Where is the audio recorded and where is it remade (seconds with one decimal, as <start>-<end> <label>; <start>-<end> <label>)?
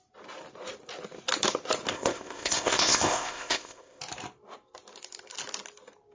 0.0-1.9 recorded; 1.9-4.0 remade; 4.0-6.1 recorded